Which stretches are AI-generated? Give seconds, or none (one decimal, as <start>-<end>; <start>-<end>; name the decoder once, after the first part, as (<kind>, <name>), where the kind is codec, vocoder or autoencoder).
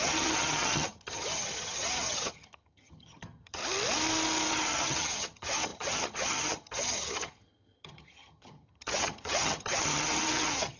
0.0-3.6 (vocoder, HiFi-GAN); 4.5-10.8